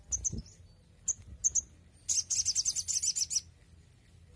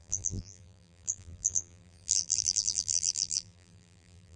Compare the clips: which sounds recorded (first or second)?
first